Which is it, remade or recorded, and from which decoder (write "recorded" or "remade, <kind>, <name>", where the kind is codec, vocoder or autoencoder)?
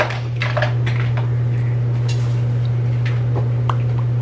recorded